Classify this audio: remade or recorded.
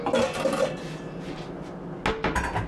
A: recorded